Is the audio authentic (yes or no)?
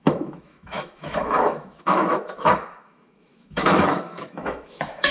no